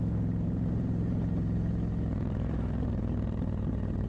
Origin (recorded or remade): remade